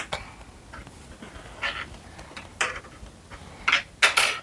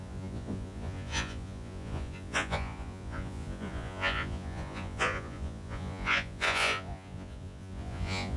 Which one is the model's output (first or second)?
second